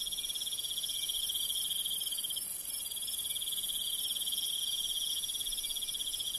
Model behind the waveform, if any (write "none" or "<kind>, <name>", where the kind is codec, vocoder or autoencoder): none